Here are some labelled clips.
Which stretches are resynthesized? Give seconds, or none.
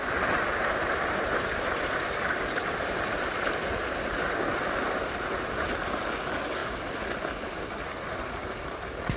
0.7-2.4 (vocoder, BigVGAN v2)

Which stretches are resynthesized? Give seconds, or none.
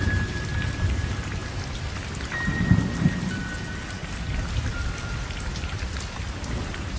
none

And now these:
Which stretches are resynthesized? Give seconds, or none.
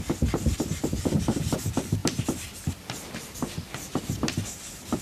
0.0-2.0 (vocoder, BigVGAN v2)